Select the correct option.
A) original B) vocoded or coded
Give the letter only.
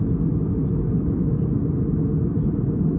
A